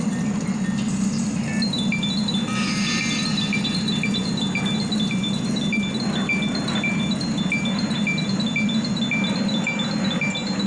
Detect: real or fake real